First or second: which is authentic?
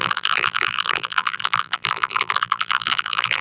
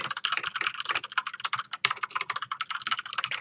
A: second